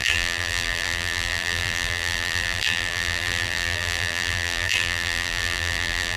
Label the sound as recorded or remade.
remade